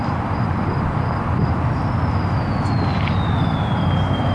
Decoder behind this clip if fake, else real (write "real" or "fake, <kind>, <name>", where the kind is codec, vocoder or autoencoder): real